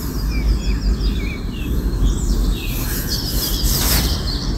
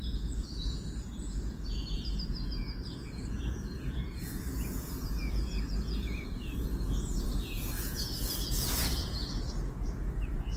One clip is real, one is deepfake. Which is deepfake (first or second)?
second